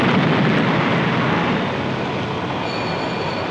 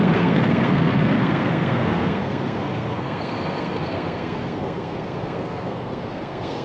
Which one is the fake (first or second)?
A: second